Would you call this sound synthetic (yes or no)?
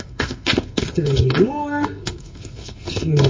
yes